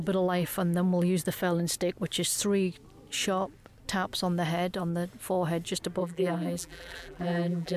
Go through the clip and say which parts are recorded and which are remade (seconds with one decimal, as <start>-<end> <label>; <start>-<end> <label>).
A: 0.0-6.0 recorded; 6.0-7.8 remade